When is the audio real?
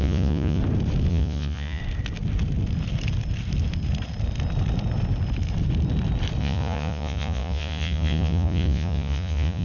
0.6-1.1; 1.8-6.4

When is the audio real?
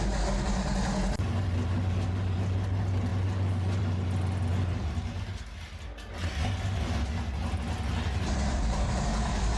0.0-9.6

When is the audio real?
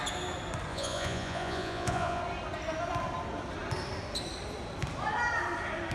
0.0-0.7; 2.2-5.9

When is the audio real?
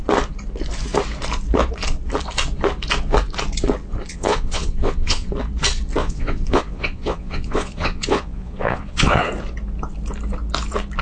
0.0-4.1; 5.3-6.0; 9.3-11.0